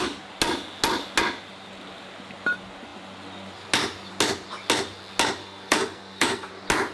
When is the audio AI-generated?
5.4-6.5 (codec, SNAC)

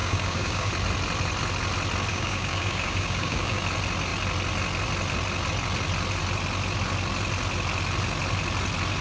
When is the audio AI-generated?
0.0-0.7 (codec, DAC); 2.1-3.6

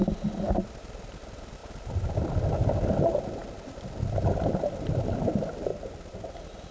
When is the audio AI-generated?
none

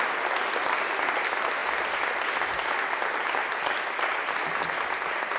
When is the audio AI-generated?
none